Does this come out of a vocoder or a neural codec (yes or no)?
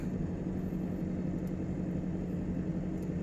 no